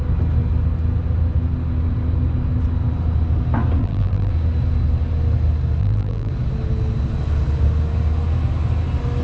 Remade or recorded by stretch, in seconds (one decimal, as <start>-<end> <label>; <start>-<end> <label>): 0.0-3.8 recorded; 3.8-4.3 remade; 4.3-5.8 recorded; 5.8-6.3 remade; 6.3-9.2 recorded